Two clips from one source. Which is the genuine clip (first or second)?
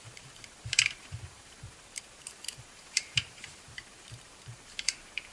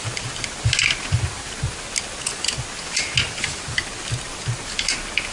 second